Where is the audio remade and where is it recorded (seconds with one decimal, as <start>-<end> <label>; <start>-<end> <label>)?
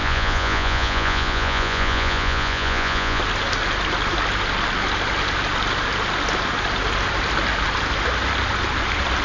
0.0-3.2 remade; 3.2-9.2 recorded